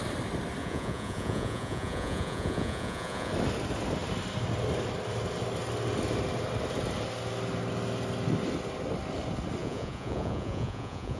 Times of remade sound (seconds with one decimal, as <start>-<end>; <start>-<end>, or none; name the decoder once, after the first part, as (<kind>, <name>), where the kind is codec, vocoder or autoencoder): 0.6-3.3 (vocoder, Vocos); 9.6-11.2